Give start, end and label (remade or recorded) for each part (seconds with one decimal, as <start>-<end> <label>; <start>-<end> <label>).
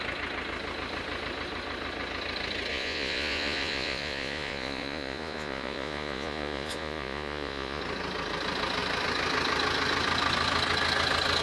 0.0-2.7 recorded; 2.7-7.8 remade; 7.8-11.4 recorded